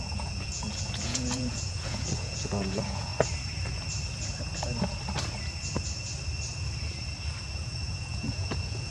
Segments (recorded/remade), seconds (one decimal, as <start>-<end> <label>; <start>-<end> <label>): 0.0-3.1 remade; 3.1-7.5 recorded; 7.5-8.9 remade